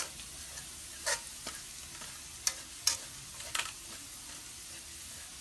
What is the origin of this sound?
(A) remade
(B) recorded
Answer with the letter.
B